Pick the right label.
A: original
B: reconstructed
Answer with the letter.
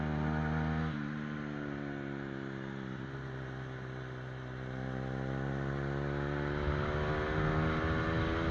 A